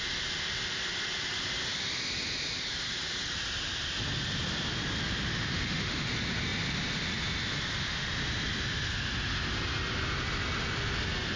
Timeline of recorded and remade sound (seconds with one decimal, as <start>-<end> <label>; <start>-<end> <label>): 0.0-5.3 recorded; 5.3-6.1 remade; 6.1-11.4 recorded